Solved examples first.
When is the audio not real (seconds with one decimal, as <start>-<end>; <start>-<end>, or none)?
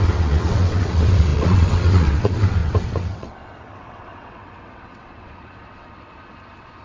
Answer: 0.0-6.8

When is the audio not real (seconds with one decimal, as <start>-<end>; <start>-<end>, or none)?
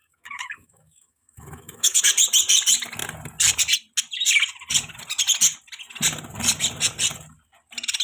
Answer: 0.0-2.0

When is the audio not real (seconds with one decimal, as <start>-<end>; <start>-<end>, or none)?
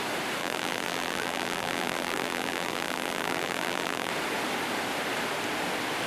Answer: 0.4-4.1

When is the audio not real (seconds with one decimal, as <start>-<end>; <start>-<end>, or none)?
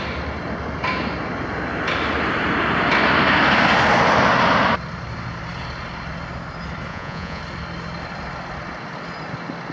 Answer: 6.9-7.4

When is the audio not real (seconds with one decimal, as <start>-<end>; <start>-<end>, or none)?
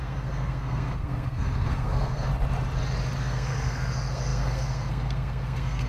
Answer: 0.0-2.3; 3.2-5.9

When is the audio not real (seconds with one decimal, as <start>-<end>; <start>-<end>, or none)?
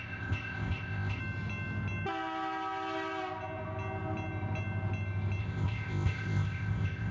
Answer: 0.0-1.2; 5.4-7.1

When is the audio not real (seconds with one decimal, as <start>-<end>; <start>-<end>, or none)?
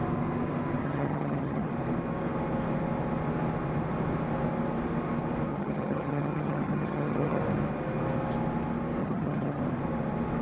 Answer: 0.8-1.7; 5.5-7.4; 9.0-9.6